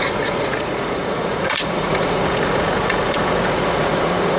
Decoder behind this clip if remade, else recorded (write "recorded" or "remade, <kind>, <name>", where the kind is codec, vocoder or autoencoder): remade, vocoder, Vocos